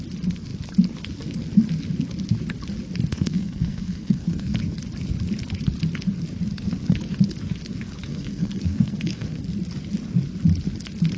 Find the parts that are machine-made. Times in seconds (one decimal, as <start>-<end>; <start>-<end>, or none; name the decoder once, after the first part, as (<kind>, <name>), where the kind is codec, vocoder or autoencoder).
3.1-4.6 (codec, SNAC); 8.1-9.4